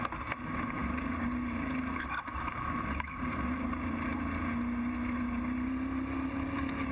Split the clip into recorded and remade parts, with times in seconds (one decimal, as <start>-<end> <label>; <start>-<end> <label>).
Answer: 0.0-2.5 recorded; 2.5-3.7 remade; 3.7-6.9 recorded